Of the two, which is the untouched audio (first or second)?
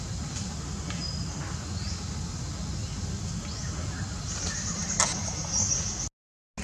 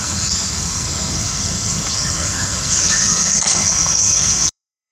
first